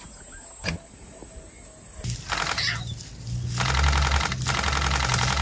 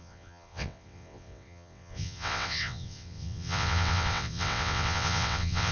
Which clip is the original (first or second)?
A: first